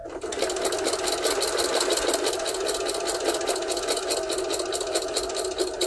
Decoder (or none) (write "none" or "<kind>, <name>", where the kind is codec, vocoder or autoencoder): none